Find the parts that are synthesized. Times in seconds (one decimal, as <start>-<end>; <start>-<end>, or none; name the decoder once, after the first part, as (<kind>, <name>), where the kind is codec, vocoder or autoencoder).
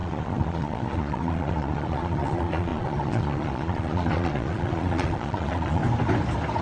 0.0-5.8 (vocoder, Vocos)